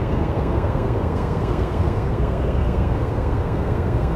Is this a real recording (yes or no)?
no